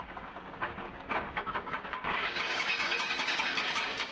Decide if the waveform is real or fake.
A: fake